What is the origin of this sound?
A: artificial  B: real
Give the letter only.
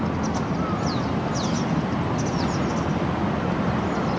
B